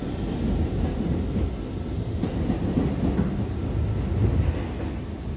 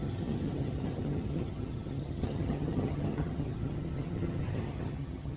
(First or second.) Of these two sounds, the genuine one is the first